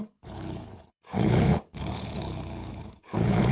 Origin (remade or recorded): remade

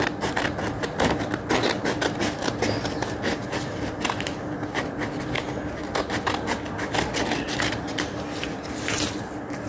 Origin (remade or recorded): recorded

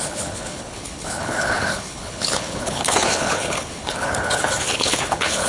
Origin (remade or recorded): remade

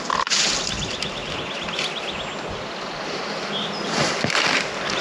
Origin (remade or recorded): recorded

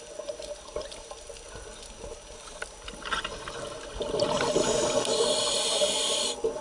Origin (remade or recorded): recorded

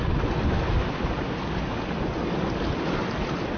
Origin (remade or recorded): recorded